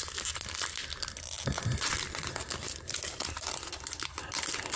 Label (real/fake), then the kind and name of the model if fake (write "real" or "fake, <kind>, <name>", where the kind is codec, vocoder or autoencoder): real